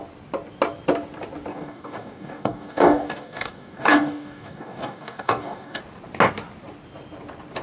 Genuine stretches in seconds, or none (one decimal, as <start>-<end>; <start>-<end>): 0.0-1.5; 5.8-7.6